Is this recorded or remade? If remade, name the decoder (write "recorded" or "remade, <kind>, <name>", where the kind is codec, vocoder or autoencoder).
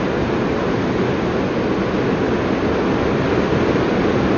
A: recorded